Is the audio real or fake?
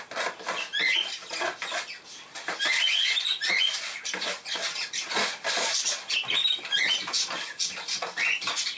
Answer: real